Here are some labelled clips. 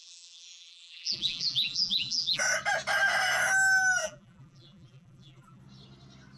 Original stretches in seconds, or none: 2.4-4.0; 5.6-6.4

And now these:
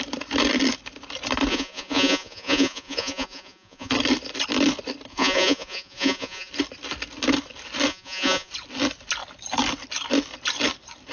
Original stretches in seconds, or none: 0.0-1.5; 3.9-5.1; 6.5-7.9; 8.5-11.1

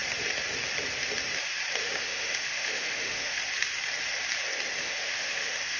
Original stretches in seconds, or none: 0.0-1.8; 3.4-4.8

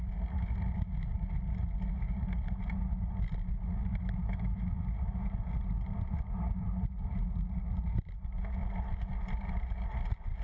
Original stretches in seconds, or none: 0.0-3.9; 4.8-10.4

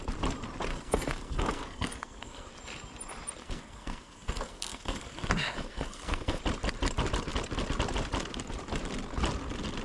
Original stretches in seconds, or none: 0.0-0.7; 2.5-3.4; 6.4-9.8